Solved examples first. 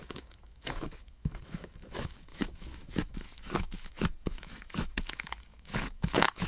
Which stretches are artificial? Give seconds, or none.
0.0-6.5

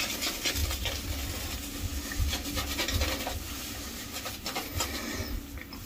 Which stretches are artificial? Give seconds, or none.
none

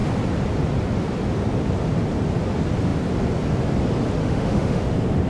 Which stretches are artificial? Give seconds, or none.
4.2-4.8

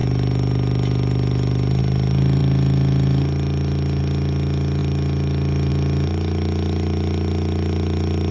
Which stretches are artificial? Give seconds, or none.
none

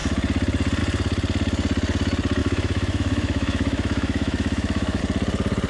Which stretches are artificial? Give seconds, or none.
2.4-5.0